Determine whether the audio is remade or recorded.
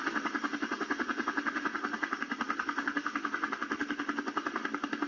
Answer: recorded